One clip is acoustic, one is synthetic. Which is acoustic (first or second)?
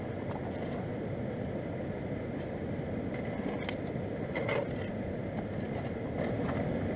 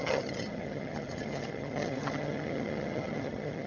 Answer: first